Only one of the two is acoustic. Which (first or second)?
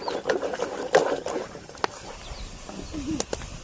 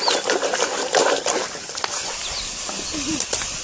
first